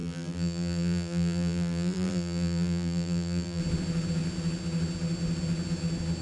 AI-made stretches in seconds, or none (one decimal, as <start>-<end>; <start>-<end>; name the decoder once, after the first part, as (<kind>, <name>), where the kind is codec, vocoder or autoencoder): 0.0-3.6 (vocoder, BigVGAN v2)